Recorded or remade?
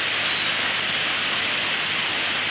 recorded